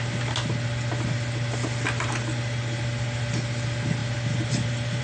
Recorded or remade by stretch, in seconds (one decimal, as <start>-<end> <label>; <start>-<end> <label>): 0.0-5.0 recorded